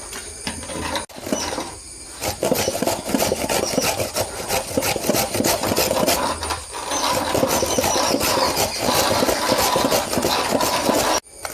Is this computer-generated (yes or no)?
no